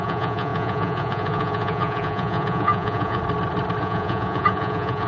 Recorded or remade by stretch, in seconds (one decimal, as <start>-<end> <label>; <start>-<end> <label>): 0.0-3.2 remade; 3.2-3.8 recorded; 3.8-5.1 remade

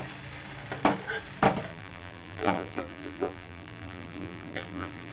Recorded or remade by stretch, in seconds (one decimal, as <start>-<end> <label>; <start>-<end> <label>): 0.0-1.7 recorded; 1.7-5.1 remade

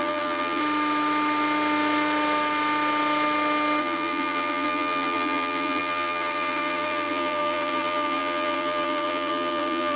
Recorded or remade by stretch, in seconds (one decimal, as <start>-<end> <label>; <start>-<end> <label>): 0.0-0.6 remade; 0.6-3.8 recorded; 3.8-10.0 remade

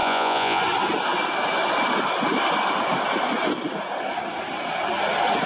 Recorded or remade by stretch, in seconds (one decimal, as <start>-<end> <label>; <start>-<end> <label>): 0.0-0.6 remade; 0.6-5.5 recorded